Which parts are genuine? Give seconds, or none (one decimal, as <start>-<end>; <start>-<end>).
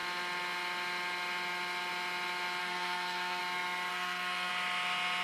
0.0-2.6; 3.4-3.9; 4.5-5.2